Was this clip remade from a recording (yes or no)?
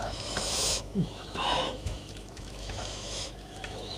yes